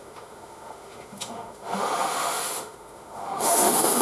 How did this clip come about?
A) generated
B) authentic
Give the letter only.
A